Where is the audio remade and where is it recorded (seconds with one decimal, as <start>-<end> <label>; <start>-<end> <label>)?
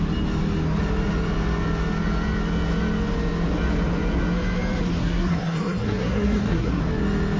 0.0-5.0 recorded; 5.0-6.8 remade; 6.8-7.4 recorded